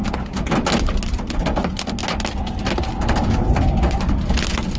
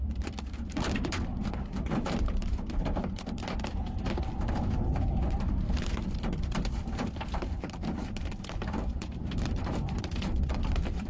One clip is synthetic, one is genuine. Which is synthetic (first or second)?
second